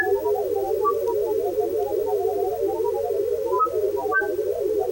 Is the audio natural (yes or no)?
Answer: yes